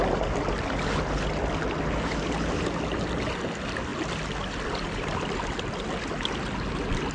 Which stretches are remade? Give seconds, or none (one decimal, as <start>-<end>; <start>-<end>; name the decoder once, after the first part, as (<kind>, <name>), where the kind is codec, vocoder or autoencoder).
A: none